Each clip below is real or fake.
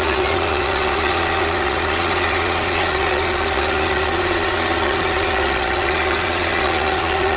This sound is fake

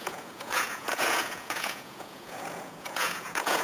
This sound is fake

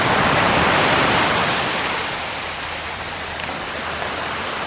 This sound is fake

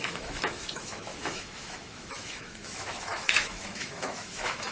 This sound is fake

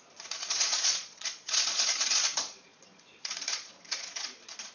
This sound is fake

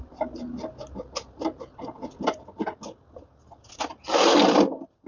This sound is real